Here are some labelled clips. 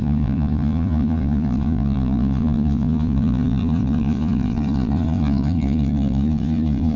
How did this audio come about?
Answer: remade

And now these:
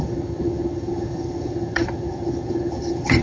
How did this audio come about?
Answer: remade